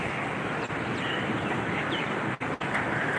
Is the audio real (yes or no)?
yes